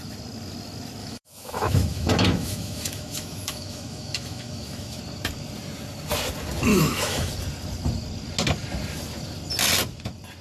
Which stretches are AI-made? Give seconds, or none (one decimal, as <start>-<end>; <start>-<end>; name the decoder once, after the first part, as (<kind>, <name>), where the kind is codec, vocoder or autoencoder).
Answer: 1.0-5.0 (autoencoder, DAC-VAE); 6.7-7.3